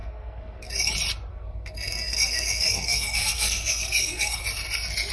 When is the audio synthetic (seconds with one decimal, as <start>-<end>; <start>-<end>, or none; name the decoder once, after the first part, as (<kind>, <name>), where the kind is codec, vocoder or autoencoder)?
0.0-0.7 (codec, SNAC); 1.3-4.4